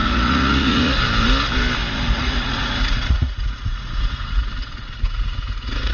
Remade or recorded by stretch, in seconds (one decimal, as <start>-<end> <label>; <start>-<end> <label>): 0.0-1.0 remade; 1.0-2.2 recorded; 2.2-5.9 remade